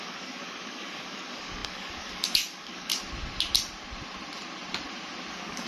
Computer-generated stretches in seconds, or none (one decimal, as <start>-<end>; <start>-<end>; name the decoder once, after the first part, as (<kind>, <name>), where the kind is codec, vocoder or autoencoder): 0.0-2.9 (codec, DAC); 5.3-5.7

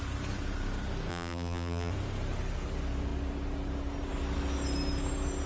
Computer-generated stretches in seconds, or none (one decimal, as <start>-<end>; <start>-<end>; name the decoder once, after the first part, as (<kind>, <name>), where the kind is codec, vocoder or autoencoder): 1.1-1.9 (vocoder, BigVGAN v2)

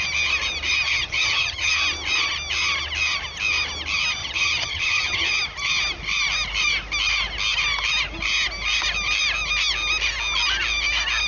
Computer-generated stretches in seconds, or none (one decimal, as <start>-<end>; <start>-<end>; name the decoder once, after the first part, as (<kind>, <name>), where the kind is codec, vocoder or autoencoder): 0.9-1.7 (vocoder, HiFi-GAN); 4.2-5.3

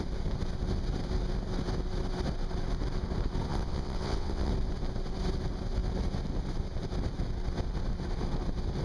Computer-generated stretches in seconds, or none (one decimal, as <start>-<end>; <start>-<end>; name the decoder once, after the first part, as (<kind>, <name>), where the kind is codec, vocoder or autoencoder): 3.5-4.5 (vocoder, WaveNeXt)

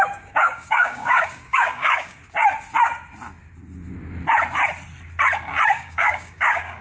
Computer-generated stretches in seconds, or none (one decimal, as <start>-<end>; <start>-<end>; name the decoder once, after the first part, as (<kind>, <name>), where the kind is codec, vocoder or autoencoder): 0.0-2.2 (codec, DAC); 5.7-6.8